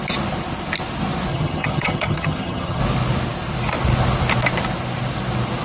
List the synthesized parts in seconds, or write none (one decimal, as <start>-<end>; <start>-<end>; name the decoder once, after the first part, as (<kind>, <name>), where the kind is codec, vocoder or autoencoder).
1.3-2.8 (vocoder, HiFi-GAN)